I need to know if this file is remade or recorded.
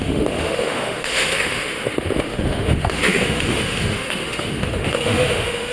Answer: remade